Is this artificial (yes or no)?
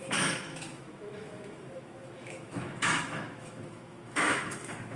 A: yes